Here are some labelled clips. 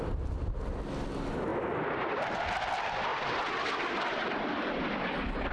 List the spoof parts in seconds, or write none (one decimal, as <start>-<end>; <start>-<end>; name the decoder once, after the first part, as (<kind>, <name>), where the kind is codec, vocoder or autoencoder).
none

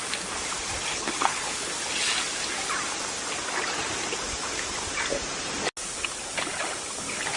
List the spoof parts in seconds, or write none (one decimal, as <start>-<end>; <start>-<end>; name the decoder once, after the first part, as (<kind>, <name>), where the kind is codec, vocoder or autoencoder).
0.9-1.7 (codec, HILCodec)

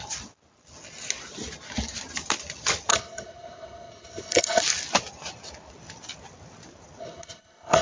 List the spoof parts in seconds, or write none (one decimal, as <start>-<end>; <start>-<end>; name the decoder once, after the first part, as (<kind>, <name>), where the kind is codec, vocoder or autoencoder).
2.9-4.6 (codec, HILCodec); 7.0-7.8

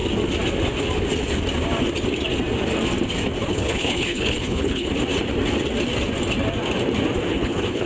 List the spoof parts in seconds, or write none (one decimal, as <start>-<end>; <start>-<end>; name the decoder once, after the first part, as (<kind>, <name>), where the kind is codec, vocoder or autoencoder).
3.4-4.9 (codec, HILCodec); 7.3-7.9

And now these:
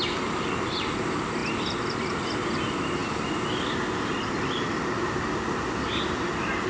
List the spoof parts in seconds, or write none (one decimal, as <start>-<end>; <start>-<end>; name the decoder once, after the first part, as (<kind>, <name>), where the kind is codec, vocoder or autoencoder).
none

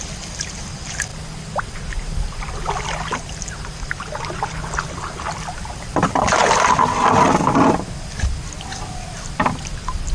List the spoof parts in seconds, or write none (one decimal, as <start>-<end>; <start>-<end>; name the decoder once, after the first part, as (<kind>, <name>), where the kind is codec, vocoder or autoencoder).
none

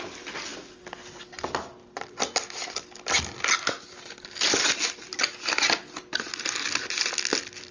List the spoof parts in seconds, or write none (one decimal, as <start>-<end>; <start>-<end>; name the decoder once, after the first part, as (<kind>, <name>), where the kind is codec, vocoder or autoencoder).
none

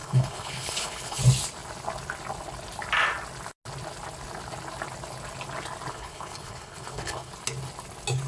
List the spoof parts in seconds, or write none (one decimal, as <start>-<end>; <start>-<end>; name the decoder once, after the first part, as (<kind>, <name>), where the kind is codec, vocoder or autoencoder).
0.0-1.2 (codec, HILCodec); 5.9-7.3